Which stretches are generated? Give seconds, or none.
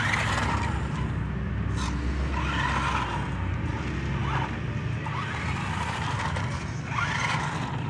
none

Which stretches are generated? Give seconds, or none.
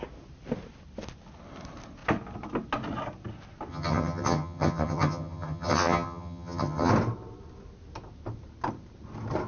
3.7-6.9 (vocoder, HiFi-GAN)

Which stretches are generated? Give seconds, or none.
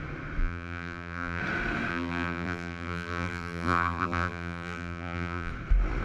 0.4-1.4 (vocoder, BigVGAN v2); 1.9-5.5